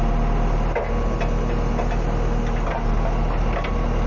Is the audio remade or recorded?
recorded